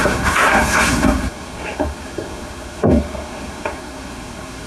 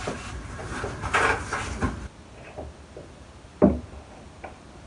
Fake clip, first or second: first